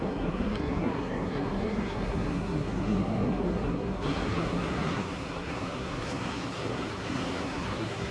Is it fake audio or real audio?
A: fake